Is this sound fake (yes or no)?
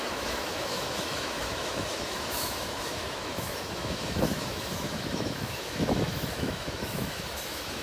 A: yes